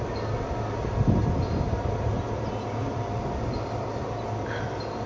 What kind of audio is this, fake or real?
real